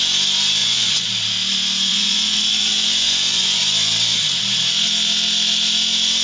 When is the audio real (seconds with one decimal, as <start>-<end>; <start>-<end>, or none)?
0.0-0.6; 1.1-1.9; 3.6-6.2